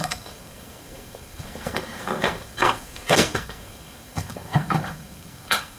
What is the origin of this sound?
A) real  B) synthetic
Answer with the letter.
B